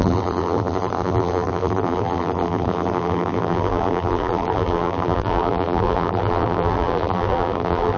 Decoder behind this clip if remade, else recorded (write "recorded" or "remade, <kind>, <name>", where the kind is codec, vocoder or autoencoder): remade, vocoder, BigVGAN v2